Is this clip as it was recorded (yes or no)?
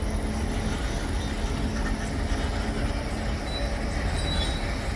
yes